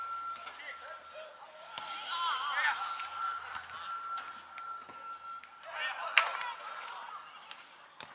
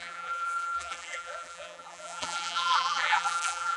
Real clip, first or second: first